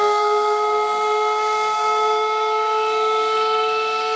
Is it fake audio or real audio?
fake